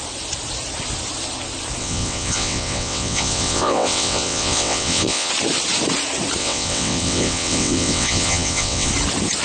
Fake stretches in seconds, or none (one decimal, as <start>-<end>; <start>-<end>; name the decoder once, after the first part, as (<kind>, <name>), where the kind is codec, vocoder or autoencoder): 1.8-5.3 (vocoder, WaveNeXt); 6.4-8.9